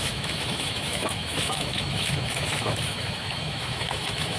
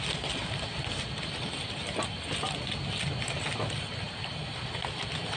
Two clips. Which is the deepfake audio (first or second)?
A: first